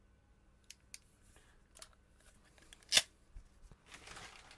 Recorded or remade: recorded